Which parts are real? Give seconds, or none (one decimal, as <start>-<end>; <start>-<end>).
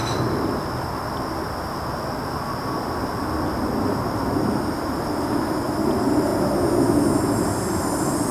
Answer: 0.0-4.9; 6.3-7.2